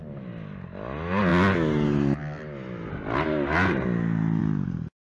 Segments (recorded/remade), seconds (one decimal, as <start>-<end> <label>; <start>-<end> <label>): 0.0-5.1 recorded